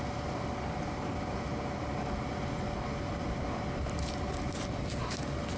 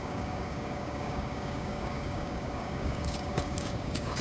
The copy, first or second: second